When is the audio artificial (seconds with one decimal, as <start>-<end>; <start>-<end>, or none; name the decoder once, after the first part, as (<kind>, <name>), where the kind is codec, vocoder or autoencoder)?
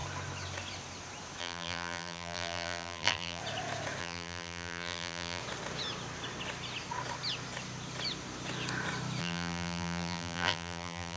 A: 1.4-3.4 (vocoder, BigVGAN v2); 4.0-5.4; 9.2-11.2